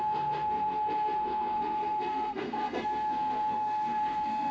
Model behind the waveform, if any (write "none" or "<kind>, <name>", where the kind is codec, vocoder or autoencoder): codec, SNAC